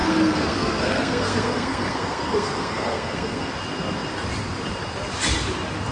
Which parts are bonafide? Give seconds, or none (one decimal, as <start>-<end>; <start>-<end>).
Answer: 3.5-5.9